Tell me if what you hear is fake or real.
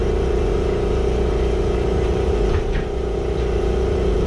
fake